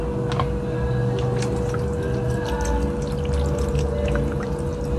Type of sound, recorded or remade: recorded